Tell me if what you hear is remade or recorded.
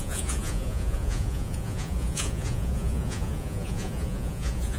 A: remade